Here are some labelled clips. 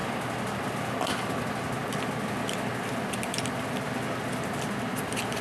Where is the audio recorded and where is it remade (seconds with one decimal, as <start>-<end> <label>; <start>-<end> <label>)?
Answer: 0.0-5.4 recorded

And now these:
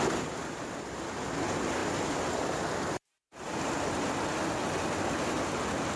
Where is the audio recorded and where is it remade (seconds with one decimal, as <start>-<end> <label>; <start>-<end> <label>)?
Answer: 0.0-6.0 recorded

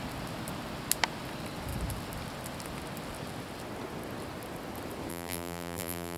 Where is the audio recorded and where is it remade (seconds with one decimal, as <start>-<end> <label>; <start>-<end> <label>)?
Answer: 0.0-5.1 recorded; 5.1-6.2 remade